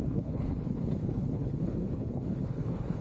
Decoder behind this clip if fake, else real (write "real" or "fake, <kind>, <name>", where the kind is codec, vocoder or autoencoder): fake, codec, HILCodec